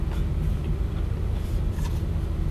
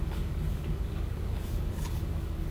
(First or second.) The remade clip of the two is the second